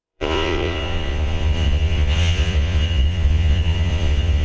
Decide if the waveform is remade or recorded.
remade